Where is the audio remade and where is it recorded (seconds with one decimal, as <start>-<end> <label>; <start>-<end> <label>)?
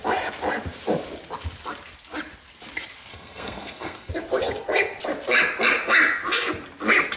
0.0-3.1 recorded; 3.1-4.1 remade; 4.1-7.2 recorded